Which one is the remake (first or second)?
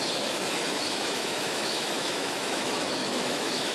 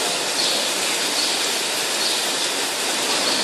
first